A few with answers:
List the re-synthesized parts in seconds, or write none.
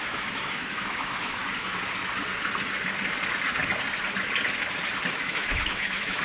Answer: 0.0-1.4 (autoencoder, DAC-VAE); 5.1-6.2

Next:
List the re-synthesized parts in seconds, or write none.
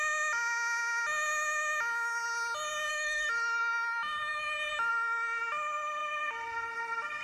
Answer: 2.9-3.6 (autoencoder, DAC-VAE)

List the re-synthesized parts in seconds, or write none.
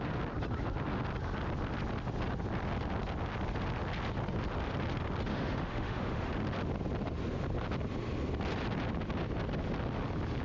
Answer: 5.3-6.3 (autoencoder, DAC-VAE)